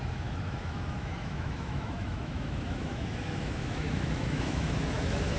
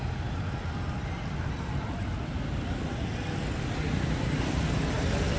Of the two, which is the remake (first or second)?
first